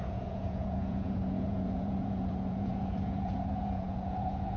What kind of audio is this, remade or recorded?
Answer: remade